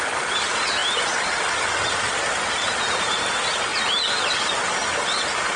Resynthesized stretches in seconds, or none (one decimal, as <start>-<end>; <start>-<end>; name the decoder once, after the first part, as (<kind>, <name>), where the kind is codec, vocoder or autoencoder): none